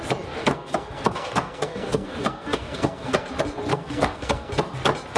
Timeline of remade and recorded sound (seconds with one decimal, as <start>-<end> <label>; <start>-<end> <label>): 0.0-0.4 recorded; 0.4-3.3 remade; 3.3-3.7 recorded; 3.7-4.5 remade; 4.5-5.2 recorded